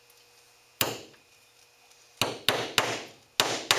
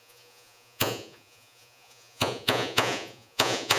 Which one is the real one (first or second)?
first